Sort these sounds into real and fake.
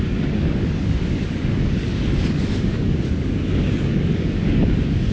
fake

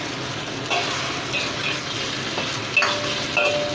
real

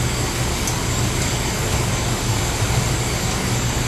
fake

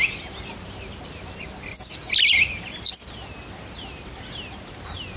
real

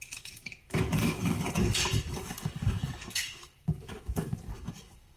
fake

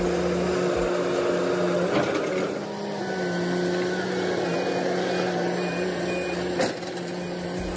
real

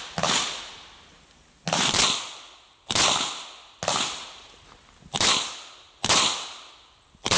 real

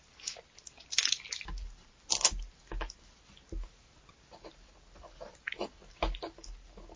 real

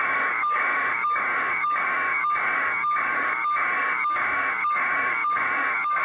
fake